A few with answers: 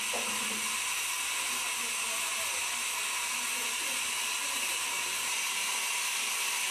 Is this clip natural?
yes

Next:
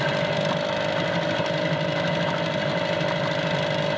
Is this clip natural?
yes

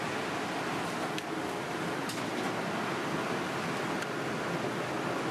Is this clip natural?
yes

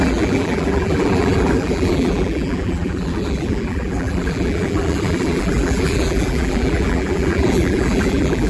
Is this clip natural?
no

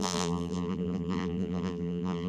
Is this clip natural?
no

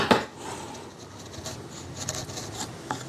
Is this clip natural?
yes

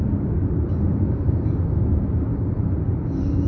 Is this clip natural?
yes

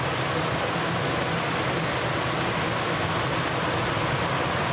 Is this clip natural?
yes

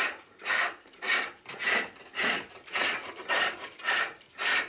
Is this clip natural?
no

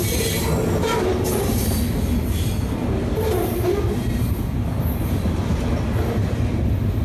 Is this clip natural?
yes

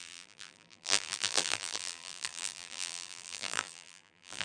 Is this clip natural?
no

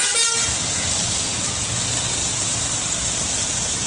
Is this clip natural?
yes